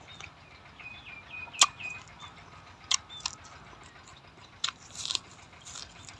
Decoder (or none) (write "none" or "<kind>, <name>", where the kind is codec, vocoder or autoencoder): none